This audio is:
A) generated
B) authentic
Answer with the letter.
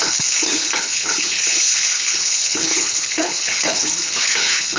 A